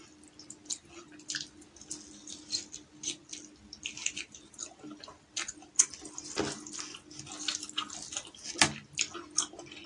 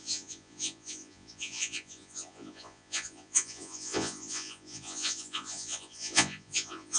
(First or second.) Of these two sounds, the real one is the first